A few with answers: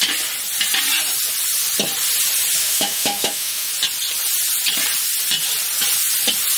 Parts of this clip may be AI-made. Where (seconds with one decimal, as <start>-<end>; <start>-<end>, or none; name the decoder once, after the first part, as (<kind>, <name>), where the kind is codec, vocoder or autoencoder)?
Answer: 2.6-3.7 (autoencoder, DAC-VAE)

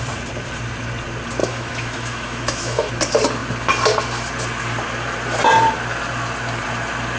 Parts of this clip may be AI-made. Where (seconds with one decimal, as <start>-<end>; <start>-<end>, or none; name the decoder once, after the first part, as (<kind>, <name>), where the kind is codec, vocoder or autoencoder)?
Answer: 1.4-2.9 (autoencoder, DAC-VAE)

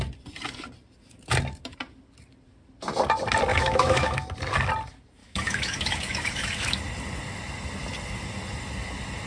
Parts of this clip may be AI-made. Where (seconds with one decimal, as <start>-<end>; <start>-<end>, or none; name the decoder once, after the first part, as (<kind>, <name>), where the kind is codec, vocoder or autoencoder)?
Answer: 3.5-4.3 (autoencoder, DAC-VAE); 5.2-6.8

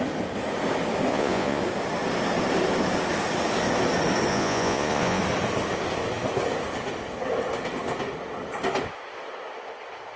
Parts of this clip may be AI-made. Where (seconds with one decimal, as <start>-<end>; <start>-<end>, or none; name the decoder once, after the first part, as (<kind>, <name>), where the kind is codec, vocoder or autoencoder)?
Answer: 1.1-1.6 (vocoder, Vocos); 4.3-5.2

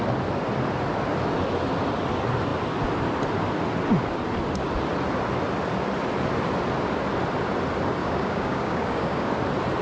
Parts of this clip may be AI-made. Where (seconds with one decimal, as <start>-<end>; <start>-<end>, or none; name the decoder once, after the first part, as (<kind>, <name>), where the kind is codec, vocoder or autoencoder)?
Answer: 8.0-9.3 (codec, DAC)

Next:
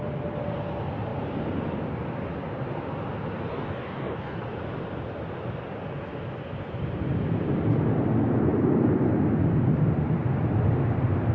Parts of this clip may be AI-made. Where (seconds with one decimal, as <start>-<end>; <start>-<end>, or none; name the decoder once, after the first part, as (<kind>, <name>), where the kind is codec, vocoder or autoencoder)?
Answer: 3.5-4.4 (codec, DAC)

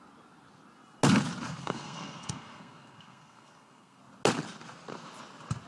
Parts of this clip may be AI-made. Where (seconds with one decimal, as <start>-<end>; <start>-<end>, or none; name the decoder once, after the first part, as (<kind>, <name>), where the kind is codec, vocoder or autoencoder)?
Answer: 1.6-4.0 (codec, SNAC)

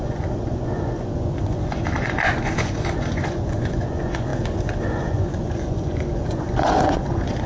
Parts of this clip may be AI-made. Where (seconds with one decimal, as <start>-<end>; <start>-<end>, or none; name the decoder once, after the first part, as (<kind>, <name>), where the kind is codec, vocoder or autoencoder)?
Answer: 0.0-7.5 (vocoder, Vocos)